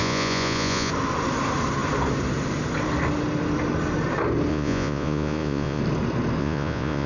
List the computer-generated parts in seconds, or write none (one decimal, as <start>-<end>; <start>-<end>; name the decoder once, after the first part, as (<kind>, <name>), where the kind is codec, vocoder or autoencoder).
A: 0.0-0.9 (vocoder, Vocos); 4.5-5.8; 6.4-7.1